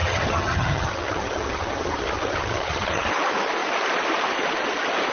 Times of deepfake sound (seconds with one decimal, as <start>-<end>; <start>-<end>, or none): 0.0-3.1